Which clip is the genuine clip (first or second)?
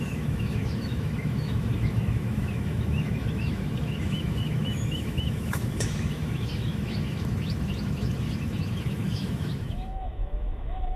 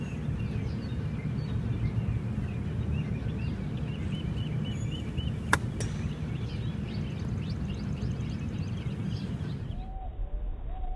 second